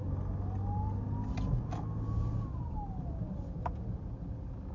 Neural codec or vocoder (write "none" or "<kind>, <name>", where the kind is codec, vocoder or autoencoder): none